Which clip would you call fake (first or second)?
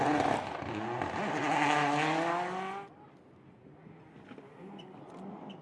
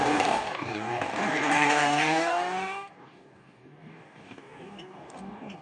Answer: second